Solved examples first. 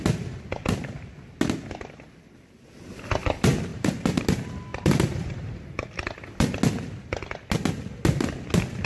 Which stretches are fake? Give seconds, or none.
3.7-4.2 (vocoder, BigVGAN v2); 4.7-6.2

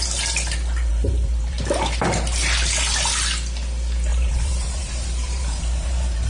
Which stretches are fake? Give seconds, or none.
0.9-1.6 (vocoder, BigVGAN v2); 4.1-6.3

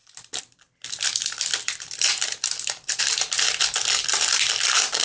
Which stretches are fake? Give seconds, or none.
0.0-3.0 (vocoder, BigVGAN v2)

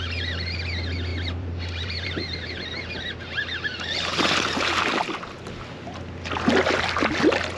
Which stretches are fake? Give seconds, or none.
1.1-2.9 (vocoder, BigVGAN v2)

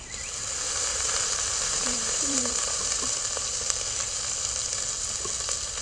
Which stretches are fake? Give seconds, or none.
0.9-2.8 (vocoder, BigVGAN v2)